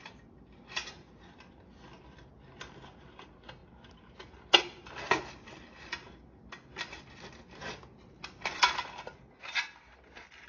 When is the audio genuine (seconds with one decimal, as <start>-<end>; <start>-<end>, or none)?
0.0-10.5

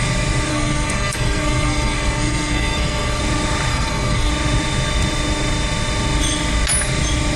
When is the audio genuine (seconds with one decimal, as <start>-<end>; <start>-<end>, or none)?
0.0-0.5; 3.2-3.7; 4.3-7.4

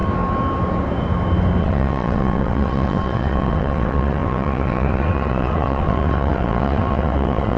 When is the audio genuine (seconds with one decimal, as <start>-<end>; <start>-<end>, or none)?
0.0-1.6

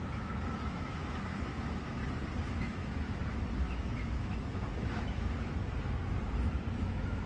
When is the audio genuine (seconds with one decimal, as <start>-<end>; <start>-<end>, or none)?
2.0-2.5; 5.6-6.7

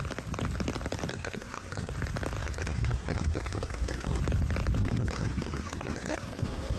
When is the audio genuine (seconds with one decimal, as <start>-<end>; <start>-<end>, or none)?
0.0-1.1; 1.9-2.4; 4.2-4.8